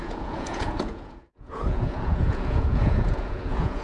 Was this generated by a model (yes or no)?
yes